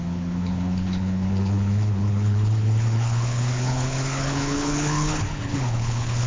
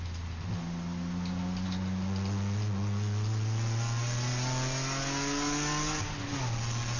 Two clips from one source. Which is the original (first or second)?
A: second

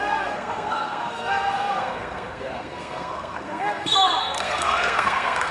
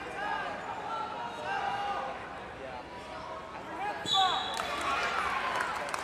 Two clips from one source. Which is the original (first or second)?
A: second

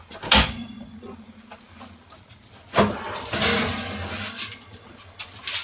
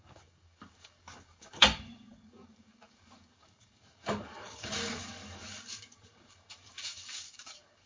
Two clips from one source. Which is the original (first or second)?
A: first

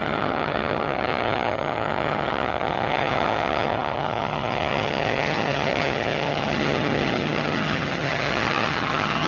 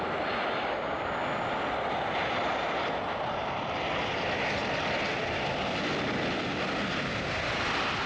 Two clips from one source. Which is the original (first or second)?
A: second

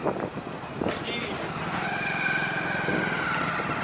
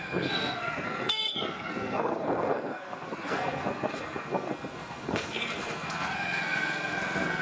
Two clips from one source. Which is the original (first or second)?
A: first